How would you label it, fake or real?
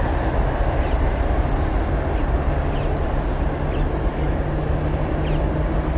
real